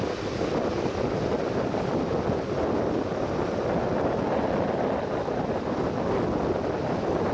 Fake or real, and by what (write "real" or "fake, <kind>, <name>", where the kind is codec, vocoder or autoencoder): real